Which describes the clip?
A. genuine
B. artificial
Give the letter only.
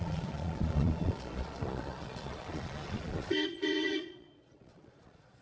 B